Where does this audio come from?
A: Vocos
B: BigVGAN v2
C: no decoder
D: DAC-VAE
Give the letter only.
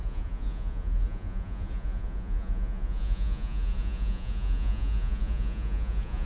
A